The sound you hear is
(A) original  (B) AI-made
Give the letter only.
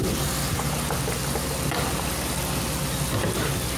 A